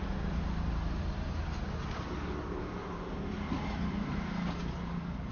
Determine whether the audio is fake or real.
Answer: real